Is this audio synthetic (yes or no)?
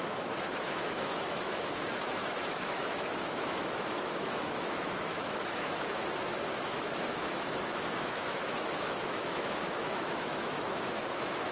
yes